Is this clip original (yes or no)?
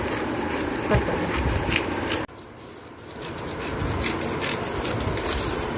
yes